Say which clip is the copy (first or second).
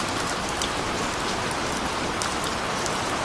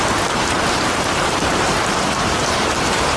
second